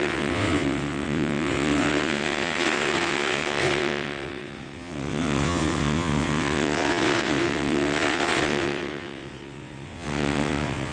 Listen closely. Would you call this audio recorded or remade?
remade